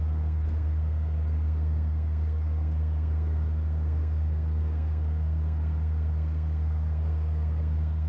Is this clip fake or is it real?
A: fake